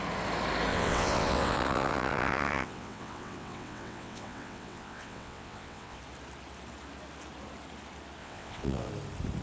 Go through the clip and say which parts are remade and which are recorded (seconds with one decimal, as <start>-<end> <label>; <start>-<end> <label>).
0.0-0.7 recorded; 0.7-6.0 remade; 6.0-8.2 recorded; 8.2-8.9 remade; 8.9-9.4 recorded